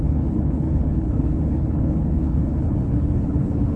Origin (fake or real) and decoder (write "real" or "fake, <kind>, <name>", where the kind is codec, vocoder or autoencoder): fake, codec, HILCodec